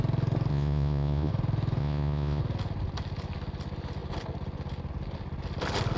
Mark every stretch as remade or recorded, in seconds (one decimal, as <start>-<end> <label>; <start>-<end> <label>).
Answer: 0.0-0.5 recorded; 0.5-1.3 remade; 1.3-1.8 recorded; 1.8-2.4 remade; 2.4-6.0 recorded